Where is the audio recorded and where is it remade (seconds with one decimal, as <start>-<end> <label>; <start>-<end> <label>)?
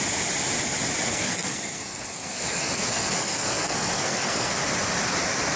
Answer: 0.0-1.1 recorded; 1.1-4.5 remade; 4.5-5.6 recorded